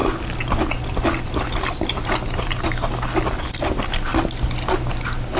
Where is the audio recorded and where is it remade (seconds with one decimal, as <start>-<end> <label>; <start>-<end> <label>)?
0.0-5.4 recorded